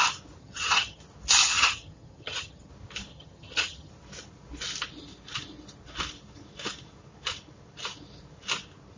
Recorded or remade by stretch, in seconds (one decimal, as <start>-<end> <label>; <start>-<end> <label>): 0.0-0.4 recorded; 0.4-1.0 remade; 1.0-1.4 recorded; 1.4-2.7 remade; 2.7-3.1 recorded; 3.1-3.9 remade; 3.9-9.0 recorded